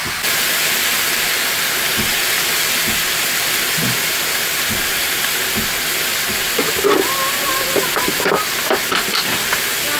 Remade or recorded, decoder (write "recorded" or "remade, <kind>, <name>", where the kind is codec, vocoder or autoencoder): recorded